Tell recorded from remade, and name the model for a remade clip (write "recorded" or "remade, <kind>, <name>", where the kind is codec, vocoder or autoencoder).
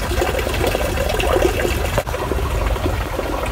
recorded